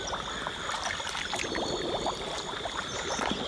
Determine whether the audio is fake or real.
real